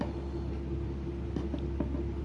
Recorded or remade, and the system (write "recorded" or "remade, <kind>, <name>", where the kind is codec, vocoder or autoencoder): recorded